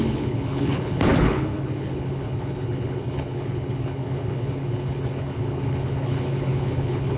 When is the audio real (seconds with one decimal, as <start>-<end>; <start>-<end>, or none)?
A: none